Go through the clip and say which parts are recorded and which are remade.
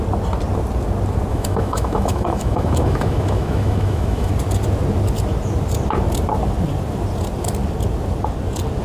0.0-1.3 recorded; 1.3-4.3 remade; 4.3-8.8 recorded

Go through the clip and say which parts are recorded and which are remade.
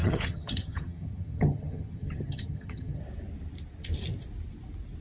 0.0-3.0 remade; 3.0-5.0 recorded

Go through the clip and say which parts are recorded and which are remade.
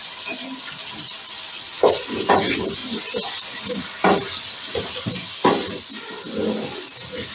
0.0-1.8 recorded; 1.8-2.3 remade; 2.3-2.8 recorded; 2.8-4.4 remade; 4.4-7.3 recorded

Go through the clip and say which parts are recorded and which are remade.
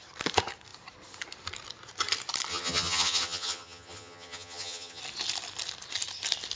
0.0-2.5 recorded; 2.5-5.0 remade; 5.0-6.6 recorded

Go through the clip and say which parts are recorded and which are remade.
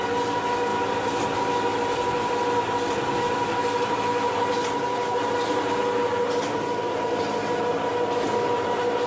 0.0-0.7 recorded; 0.7-5.7 remade; 5.7-9.1 recorded